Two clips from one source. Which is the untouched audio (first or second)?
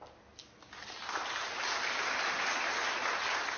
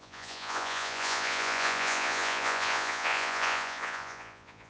first